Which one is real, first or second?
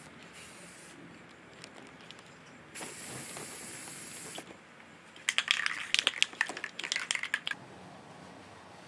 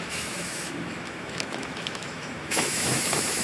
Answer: first